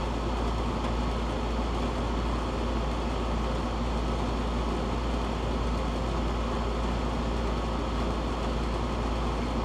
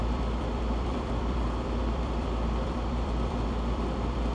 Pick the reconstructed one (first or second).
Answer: second